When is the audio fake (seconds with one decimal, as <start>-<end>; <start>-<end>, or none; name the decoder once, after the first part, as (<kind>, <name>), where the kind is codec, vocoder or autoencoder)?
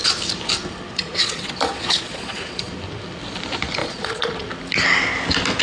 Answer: 0.9-2.7 (vocoder, Vocos); 3.8-4.3